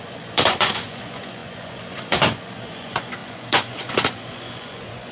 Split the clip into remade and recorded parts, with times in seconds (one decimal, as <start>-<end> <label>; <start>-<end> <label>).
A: 0.0-5.1 remade